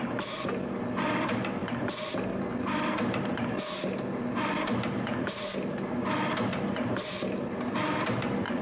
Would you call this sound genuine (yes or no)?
yes